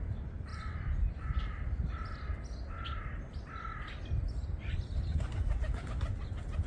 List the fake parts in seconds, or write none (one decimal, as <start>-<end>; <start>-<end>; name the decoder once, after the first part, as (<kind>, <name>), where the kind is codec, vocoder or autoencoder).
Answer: 0.5-1.4 (vocoder, Vocos)